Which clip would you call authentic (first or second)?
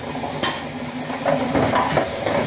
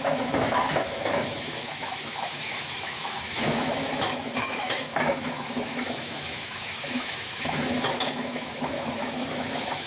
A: first